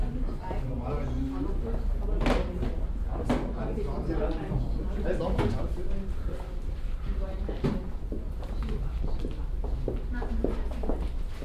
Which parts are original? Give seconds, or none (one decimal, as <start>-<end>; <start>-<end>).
0.0-6.6; 7.7-11.4